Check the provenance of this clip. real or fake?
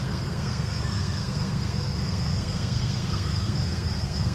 fake